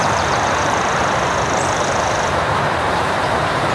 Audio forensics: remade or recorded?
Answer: remade